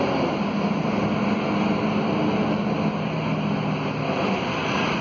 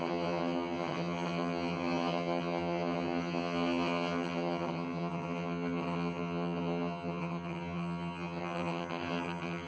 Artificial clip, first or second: second